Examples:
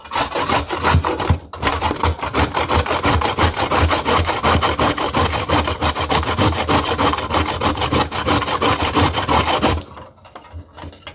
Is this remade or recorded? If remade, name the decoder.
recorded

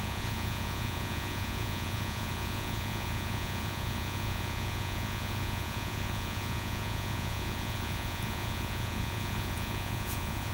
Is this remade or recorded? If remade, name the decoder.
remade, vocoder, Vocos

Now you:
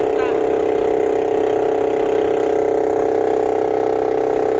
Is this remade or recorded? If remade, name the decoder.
recorded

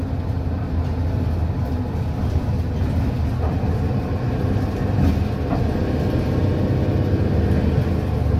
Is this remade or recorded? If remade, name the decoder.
recorded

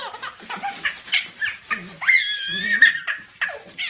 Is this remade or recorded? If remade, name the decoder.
recorded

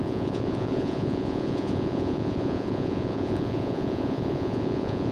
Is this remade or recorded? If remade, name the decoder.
remade, vocoder, Vocos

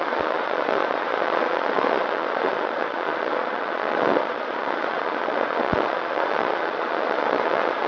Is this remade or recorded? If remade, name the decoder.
remade, vocoder, Vocos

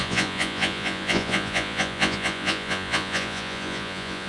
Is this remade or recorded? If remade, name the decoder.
remade, vocoder, Vocos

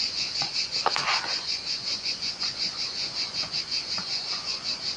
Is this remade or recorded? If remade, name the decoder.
remade, vocoder, Vocos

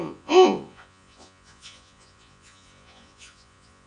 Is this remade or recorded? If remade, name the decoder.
remade, vocoder, Vocos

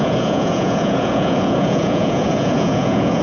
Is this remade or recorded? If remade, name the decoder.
remade, vocoder, Vocos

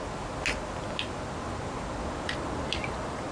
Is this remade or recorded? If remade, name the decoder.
recorded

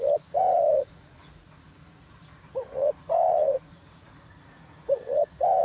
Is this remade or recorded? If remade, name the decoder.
remade, vocoder, Vocos